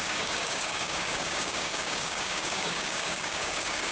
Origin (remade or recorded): remade